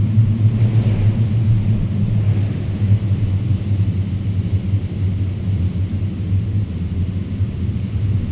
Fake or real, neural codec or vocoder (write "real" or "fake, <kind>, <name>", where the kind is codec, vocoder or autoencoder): real